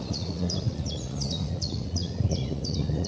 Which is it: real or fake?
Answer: fake